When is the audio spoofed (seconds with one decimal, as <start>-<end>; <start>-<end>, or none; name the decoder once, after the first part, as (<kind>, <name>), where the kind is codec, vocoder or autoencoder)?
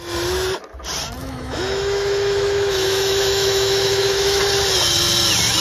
1.2-4.4 (autoencoder, DAC-VAE)